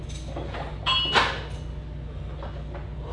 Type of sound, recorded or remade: recorded